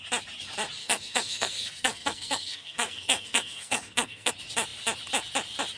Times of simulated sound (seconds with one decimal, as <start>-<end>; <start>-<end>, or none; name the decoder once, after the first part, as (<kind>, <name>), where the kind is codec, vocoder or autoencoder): 0.8-4.3 (codec, SNAC)